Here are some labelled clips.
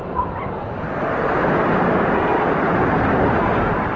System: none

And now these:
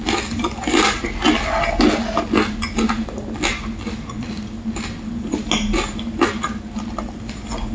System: none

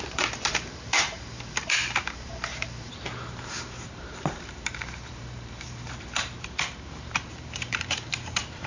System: vocoder, BigVGAN v2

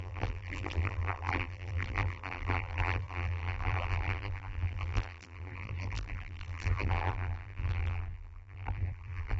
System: vocoder, BigVGAN v2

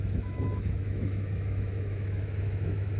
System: autoencoder, DAC-VAE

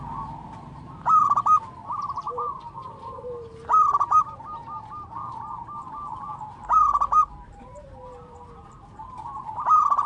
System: vocoder, BigVGAN v2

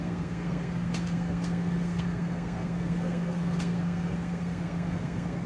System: codec, SNAC